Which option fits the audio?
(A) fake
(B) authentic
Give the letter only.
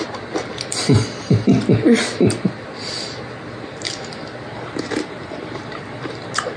A